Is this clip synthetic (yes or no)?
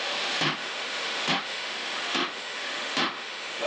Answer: yes